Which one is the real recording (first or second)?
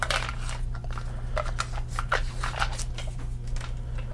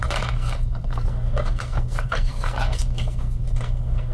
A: first